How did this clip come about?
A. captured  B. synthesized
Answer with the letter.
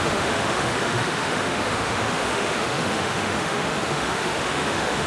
B